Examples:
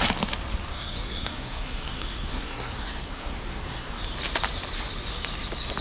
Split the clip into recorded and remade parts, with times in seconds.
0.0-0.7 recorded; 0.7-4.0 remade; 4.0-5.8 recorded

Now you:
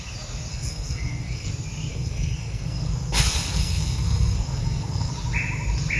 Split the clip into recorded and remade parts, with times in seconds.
0.0-0.5 recorded; 0.5-1.5 remade; 1.5-1.9 recorded; 1.9-5.1 remade; 5.1-6.0 recorded

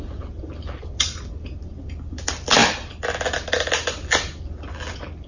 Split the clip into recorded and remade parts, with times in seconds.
0.0-5.3 recorded

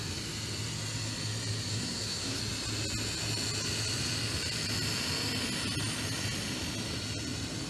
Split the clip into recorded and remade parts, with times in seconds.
0.0-1.7 recorded; 1.7-2.4 remade; 2.4-7.7 recorded

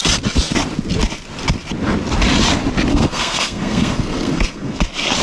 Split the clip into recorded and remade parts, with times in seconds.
0.0-2.9 recorded; 2.9-4.8 remade; 4.8-5.2 recorded